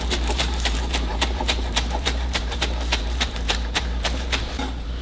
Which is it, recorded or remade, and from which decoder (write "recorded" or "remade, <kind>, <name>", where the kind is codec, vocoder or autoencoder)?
remade, vocoder, BigVGAN v2